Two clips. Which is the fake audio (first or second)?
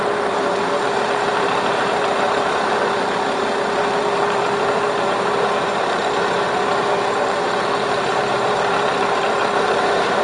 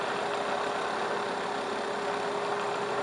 first